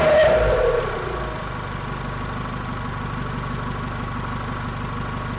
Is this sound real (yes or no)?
yes